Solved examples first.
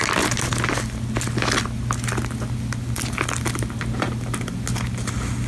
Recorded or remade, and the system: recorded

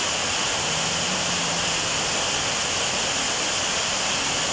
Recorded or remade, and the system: recorded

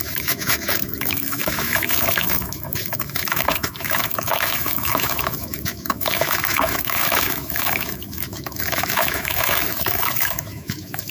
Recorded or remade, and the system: remade, autoencoder, DAC-VAE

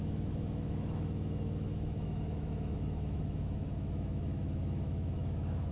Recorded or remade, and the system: remade, autoencoder, DAC-VAE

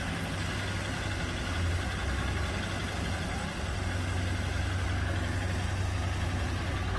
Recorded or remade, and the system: recorded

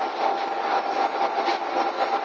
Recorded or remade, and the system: recorded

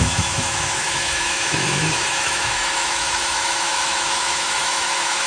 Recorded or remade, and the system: remade, autoencoder, DAC-VAE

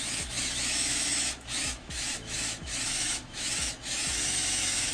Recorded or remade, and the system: remade, autoencoder, DAC-VAE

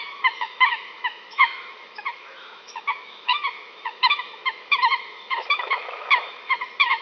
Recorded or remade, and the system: remade, autoencoder, DAC-VAE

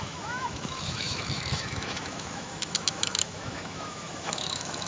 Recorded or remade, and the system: remade, autoencoder, DAC-VAE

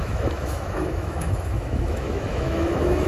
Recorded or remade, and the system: remade, autoencoder, DAC-VAE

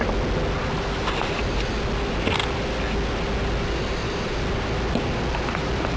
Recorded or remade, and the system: recorded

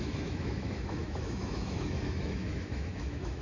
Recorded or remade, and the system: remade, autoencoder, DAC-VAE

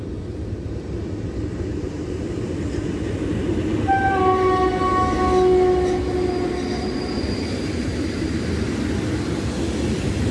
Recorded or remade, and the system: recorded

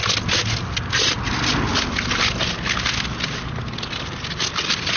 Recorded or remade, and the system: recorded